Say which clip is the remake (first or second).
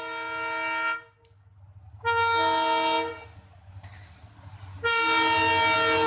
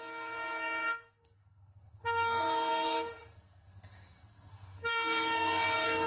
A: second